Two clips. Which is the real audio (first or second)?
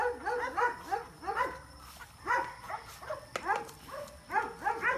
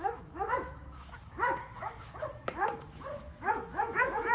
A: first